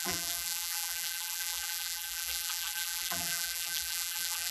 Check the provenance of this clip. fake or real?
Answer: fake